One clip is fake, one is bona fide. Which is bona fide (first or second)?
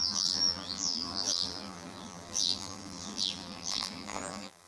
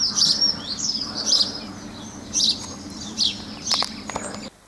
second